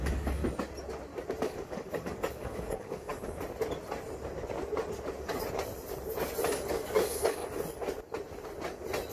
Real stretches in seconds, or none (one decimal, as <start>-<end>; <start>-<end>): 0.4-1.4; 3.1-6.7; 7.4-9.1